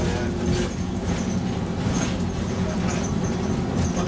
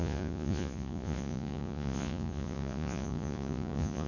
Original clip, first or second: first